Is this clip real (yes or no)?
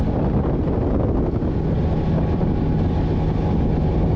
yes